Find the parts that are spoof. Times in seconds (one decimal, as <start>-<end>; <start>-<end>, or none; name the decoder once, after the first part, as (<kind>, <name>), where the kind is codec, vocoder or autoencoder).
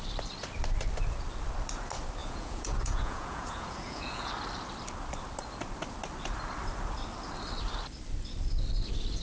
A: 2.2-4.3 (vocoder, Vocos)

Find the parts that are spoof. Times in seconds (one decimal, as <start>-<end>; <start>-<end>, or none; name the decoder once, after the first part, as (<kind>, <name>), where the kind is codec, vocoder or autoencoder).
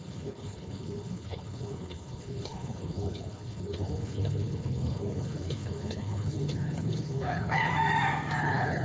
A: 0.0-7.7 (codec, HILCodec); 8.4-8.8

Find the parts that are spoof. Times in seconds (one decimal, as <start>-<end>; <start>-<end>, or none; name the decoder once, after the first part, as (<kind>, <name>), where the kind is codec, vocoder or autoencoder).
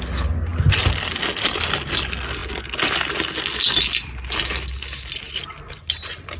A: none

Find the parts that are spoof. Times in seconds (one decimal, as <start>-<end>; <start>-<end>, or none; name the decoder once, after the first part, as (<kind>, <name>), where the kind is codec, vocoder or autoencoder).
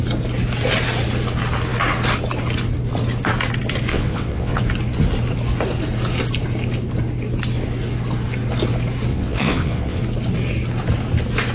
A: 3.9-4.6 (vocoder, WaveNeXt); 9.1-10.0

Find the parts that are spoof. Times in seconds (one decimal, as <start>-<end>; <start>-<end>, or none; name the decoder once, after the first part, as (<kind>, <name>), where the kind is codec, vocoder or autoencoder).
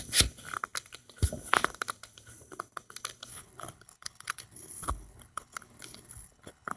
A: 3.3-6.8 (codec, HILCodec)